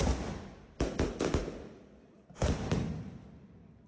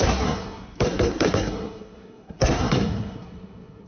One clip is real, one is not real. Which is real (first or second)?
first